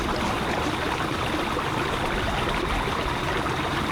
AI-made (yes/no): no